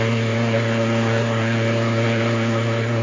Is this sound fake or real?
fake